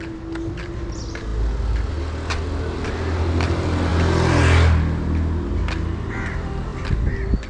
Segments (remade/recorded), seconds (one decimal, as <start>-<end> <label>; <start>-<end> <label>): 0.0-7.5 recorded